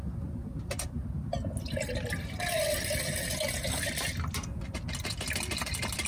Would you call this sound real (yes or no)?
yes